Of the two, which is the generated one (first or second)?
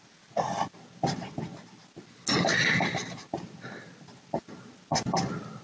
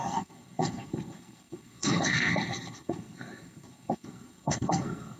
second